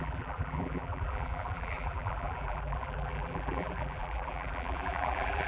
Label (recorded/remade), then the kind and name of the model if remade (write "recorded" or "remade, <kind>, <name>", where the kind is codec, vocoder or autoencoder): remade, vocoder, BigVGAN v2